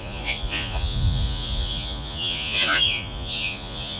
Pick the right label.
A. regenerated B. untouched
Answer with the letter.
A